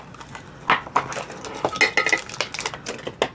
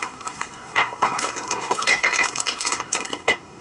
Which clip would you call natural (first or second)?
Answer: first